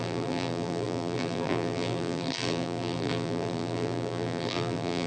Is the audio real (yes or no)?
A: no